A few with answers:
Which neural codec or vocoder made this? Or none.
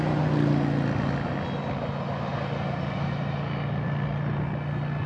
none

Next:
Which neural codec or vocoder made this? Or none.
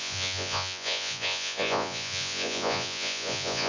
vocoder, Vocos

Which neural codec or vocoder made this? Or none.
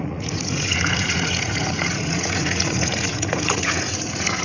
vocoder, Vocos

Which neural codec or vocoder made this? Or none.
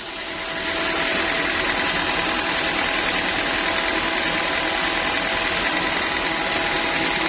none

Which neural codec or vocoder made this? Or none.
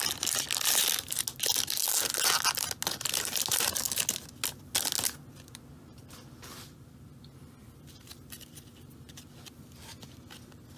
none